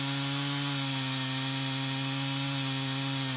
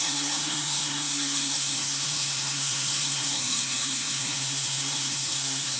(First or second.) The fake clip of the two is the second